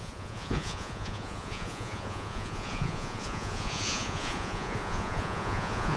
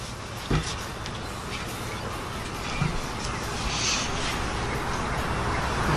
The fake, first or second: first